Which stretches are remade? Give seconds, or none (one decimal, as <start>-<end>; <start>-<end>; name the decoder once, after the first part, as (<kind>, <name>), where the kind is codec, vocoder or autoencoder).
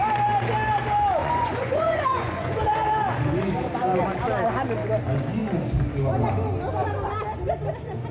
1.2-2.6 (vocoder, Vocos)